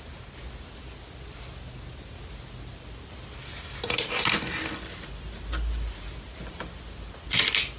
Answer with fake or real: real